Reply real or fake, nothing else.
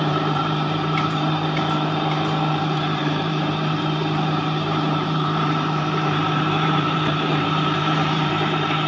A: fake